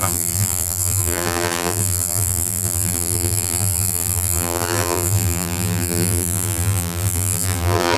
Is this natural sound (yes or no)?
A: no